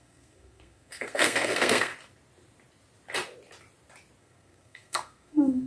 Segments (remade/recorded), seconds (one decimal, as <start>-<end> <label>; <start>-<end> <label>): 0.0-1.9 remade; 1.9-4.2 recorded; 4.2-5.7 remade